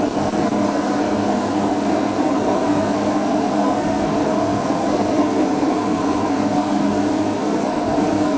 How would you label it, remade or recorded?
remade